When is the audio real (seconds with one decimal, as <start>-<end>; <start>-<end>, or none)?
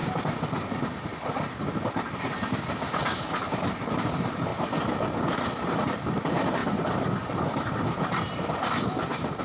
0.0-3.4; 4.5-5.2